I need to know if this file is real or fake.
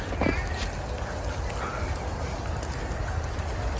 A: real